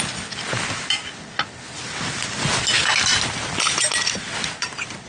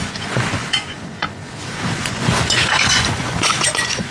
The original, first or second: first